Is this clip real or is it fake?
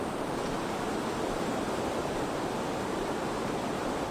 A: real